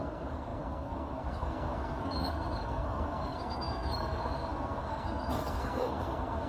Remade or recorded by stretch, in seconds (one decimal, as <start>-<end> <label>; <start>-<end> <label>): 0.0-6.5 remade